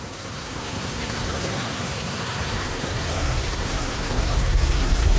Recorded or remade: remade